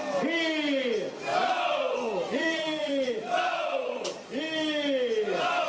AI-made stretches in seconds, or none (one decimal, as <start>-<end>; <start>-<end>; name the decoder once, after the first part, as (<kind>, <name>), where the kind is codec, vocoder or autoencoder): 1.3-4.4 (vocoder, Vocos)

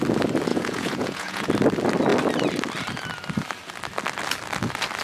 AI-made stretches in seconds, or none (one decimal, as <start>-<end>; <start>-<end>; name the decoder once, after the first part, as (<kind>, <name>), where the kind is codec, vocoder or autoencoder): 0.5-1.5 (vocoder, Vocos)

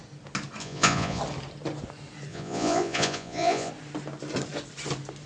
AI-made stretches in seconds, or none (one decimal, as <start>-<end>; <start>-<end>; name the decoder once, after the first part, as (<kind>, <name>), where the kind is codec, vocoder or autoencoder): 0.6-1.2 (vocoder, Vocos); 2.3-3.7

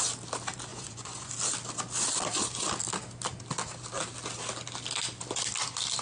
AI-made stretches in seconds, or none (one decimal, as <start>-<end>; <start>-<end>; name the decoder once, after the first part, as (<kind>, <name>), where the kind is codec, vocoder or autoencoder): 0.7-1.3 (vocoder, Vocos)

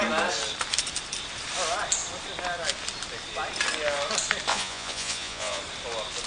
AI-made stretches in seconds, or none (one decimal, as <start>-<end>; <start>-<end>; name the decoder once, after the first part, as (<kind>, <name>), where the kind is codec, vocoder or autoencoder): 4.5-5.6 (vocoder, Vocos)